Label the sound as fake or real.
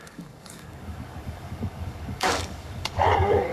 fake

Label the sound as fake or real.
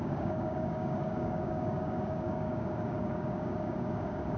fake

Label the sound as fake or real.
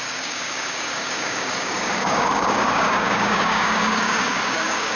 fake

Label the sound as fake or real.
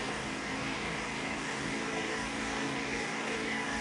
fake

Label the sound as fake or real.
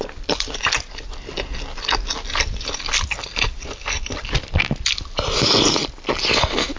real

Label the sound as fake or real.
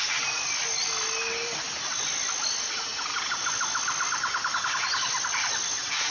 real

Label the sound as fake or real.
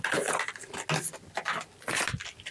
real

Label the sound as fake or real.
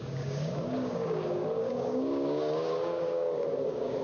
fake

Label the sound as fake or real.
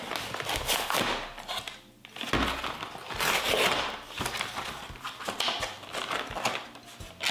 real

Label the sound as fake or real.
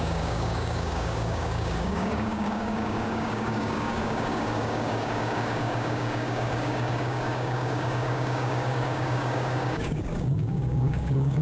fake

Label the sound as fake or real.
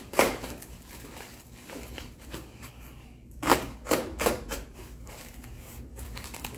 fake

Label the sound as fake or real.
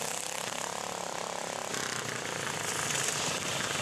real